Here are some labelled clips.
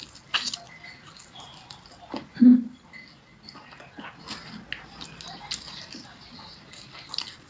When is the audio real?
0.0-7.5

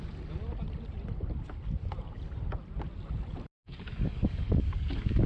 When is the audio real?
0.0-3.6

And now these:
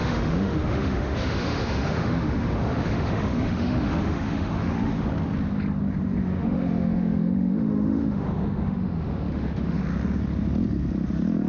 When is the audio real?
5.0-6.2; 9.8-11.5

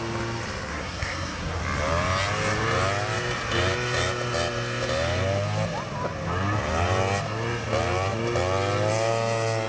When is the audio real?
0.0-0.7; 1.6-9.7

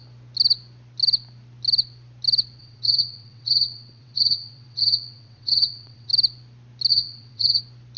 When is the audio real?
0.0-2.6; 6.1-6.9; 7.6-8.0

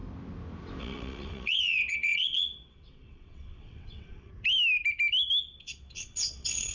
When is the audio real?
0.0-0.8; 4.3-5.4

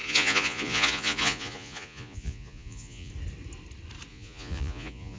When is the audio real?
3.1-4.1